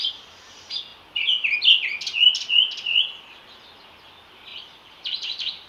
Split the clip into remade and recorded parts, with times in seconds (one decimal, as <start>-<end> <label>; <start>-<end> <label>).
0.0-4.5 recorded; 4.5-5.7 remade